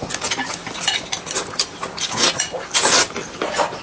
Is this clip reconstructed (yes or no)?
no